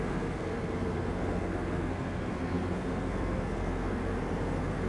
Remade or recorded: remade